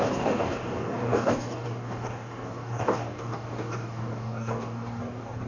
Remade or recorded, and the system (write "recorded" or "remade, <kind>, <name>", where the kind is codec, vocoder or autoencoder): remade, codec, DAC